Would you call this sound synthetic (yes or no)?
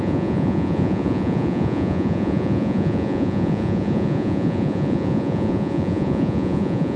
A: yes